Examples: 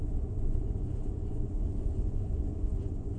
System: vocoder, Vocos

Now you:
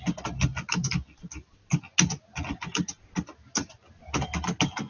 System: none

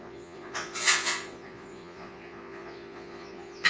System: vocoder, Vocos